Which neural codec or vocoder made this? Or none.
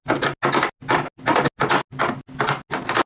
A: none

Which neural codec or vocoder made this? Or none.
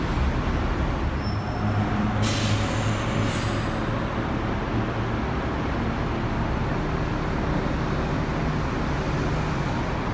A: none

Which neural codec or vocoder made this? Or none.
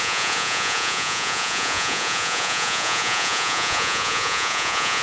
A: vocoder, Vocos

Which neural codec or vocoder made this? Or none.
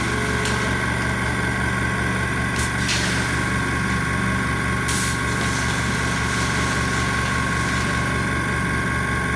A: none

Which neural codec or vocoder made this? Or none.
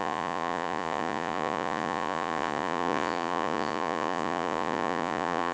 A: vocoder, Vocos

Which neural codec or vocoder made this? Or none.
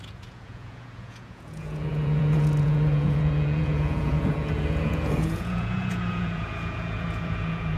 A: vocoder, Vocos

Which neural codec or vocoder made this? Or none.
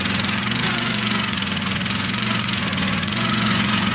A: vocoder, Vocos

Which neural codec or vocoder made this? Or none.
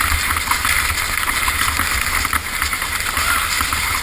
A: none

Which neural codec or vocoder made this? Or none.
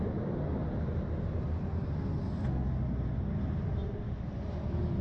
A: none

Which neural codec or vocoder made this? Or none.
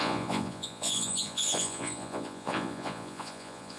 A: vocoder, Vocos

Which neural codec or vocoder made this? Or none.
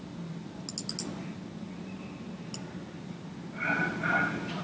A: none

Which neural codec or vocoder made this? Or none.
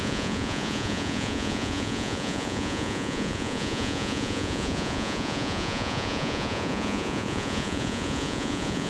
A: vocoder, Vocos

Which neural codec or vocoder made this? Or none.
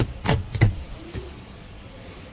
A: vocoder, Vocos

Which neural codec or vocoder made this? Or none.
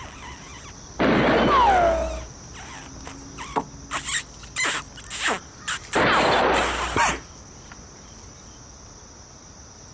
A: none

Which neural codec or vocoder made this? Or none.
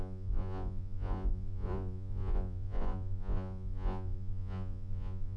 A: vocoder, Vocos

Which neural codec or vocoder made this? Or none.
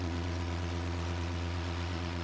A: vocoder, Vocos